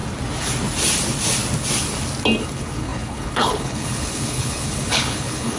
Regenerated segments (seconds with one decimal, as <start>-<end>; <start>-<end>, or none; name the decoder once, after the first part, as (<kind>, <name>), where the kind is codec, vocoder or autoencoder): 2.4-5.6 (codec, HILCodec)